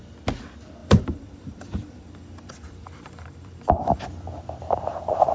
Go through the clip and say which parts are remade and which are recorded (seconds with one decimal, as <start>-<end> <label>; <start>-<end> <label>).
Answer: 0.0-0.8 recorded; 0.8-4.0 remade; 4.0-5.3 recorded